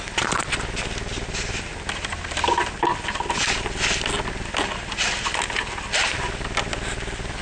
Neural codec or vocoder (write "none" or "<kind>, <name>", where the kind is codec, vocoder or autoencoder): none